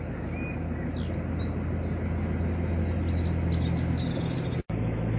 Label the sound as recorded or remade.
recorded